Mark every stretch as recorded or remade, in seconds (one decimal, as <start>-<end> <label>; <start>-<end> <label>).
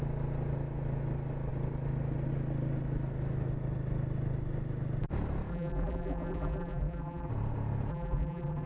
0.0-5.5 recorded; 5.5-7.3 remade; 7.3-7.9 recorded; 7.9-8.7 remade